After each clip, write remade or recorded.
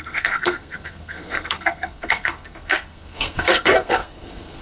remade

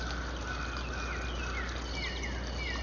recorded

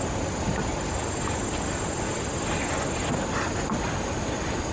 recorded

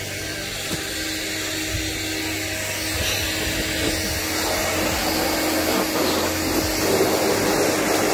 recorded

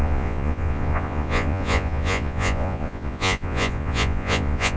remade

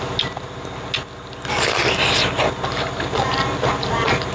recorded